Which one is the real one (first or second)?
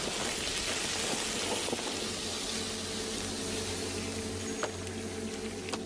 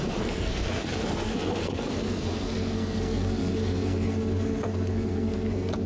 first